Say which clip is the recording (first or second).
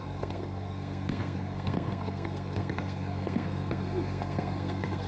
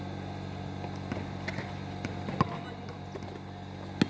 second